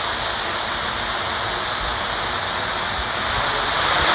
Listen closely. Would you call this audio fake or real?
real